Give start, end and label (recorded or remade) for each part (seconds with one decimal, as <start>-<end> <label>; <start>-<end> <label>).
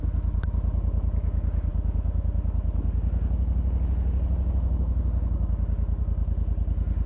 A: 0.0-7.1 recorded